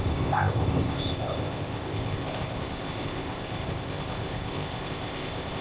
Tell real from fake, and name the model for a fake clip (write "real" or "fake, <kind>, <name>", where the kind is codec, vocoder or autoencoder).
fake, codec, ZipCodec